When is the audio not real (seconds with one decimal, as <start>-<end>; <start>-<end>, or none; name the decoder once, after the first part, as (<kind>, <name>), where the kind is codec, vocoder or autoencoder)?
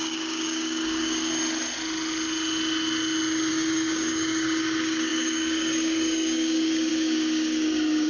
0.0-1.3 (codec, DAC); 3.5-8.1